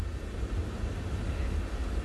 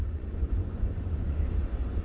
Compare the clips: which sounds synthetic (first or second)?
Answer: second